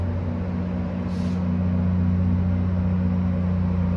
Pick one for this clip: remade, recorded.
recorded